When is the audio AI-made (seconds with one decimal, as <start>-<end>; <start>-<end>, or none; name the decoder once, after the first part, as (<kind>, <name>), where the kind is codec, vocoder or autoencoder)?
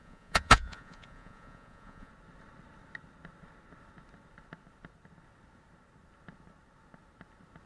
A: 0.0-2.1 (vocoder, Vocos)